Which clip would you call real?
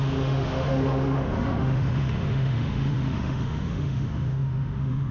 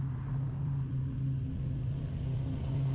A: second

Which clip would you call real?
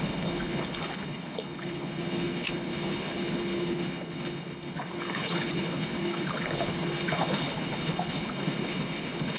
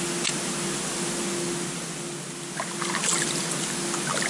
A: second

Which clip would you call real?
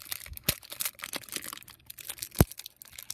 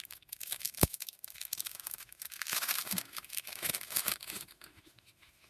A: first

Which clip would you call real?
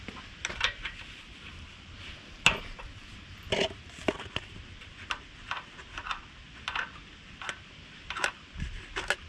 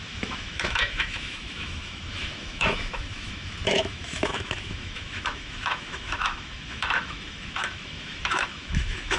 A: first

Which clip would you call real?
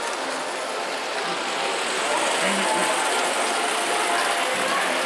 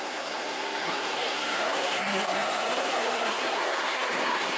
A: first